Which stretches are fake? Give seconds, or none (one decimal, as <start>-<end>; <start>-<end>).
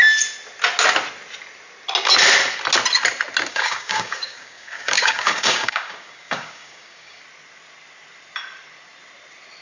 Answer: 3.5-7.2